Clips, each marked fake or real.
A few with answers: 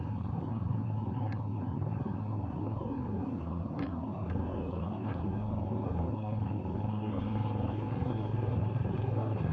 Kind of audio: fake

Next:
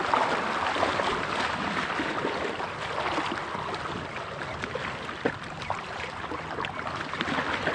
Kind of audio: real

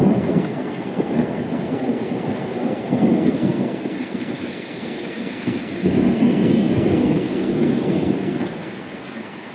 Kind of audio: fake